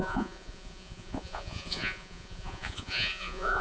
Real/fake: fake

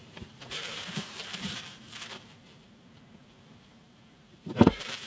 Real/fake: fake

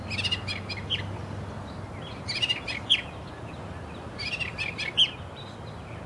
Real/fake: real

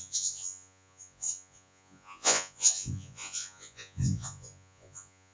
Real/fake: fake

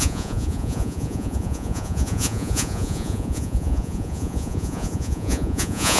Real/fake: fake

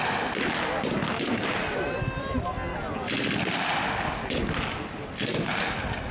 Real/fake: real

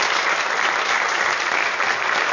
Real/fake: real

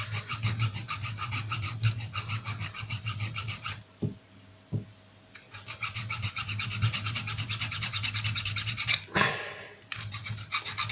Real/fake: real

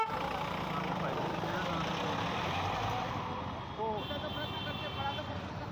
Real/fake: real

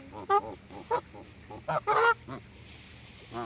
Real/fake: real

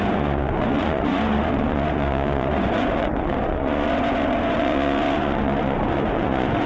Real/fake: fake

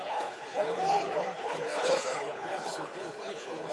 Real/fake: fake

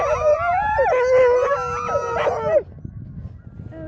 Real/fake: real